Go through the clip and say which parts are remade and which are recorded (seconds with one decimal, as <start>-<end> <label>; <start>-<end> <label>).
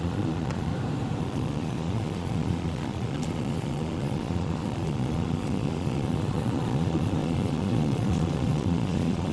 0.0-0.7 remade; 0.7-1.2 recorded; 1.2-9.3 remade